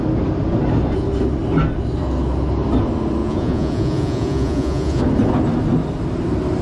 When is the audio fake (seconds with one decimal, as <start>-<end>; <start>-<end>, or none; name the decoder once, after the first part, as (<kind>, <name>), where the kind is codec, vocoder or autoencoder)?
3.2-5.0 (vocoder, Vocos)